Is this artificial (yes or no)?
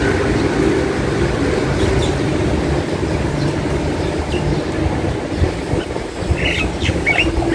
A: no